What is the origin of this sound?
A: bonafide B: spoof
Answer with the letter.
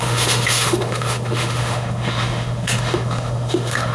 B